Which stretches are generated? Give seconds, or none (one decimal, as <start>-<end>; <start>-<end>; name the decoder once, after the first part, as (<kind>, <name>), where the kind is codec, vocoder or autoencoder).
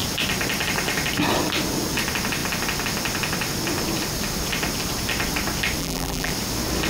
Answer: 5.8-6.3 (vocoder, BigVGAN v2)